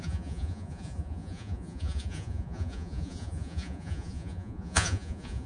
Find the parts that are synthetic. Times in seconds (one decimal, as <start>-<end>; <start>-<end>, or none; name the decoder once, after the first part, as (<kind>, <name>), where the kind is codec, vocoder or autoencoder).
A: 0.0-5.5 (vocoder, Vocos)